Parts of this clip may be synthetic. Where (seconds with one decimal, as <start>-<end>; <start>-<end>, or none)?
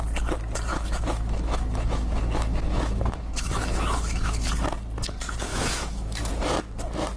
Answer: 0.7-4.5; 5.5-6.3